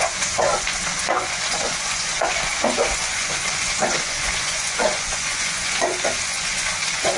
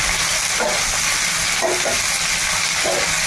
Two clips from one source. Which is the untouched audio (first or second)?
second